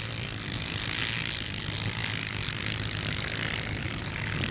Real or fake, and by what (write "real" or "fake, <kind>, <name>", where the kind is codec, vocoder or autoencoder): real